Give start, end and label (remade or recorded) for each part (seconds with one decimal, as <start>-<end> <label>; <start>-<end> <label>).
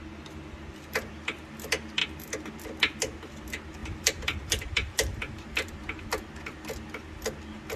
0.0-3.8 recorded; 3.8-6.0 remade; 6.0-7.8 recorded